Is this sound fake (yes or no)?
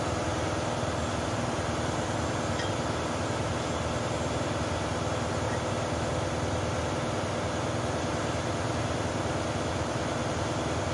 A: no